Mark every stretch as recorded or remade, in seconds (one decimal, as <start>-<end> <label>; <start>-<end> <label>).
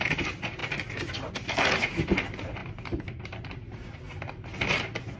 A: 0.0-2.6 recorded; 2.6-4.0 remade; 4.0-5.2 recorded